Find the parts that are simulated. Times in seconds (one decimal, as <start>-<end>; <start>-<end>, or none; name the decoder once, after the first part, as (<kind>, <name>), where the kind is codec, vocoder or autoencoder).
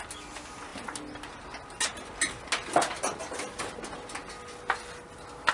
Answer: none